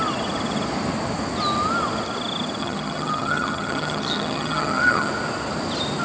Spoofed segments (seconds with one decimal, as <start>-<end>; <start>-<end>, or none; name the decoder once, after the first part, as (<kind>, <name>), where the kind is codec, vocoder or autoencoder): 2.6-5.1 (vocoder, HiFi-GAN)